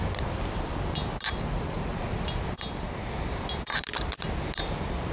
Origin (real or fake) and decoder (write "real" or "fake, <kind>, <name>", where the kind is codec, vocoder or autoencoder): real